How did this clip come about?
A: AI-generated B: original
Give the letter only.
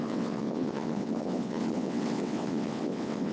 A